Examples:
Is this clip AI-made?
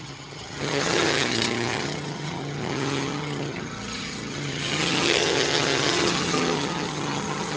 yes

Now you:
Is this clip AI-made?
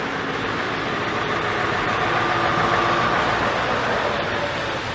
no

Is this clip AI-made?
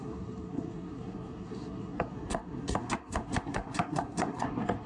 yes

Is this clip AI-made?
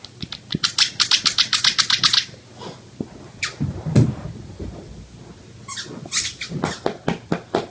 no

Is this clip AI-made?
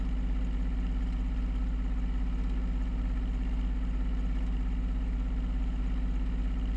no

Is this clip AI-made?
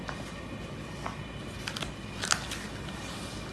no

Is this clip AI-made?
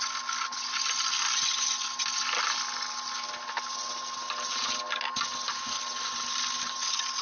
no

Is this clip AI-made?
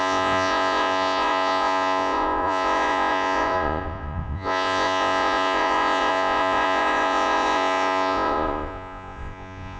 yes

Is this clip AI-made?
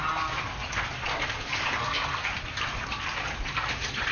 no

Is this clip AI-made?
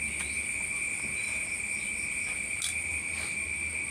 no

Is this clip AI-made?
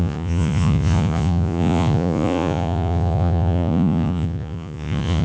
yes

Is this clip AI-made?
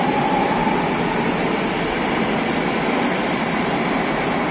yes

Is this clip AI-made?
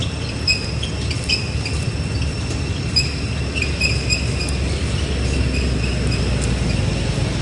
no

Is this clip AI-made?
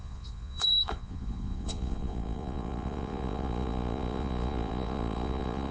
yes